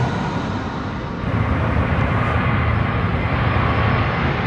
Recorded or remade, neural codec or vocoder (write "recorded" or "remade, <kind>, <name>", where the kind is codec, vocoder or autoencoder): recorded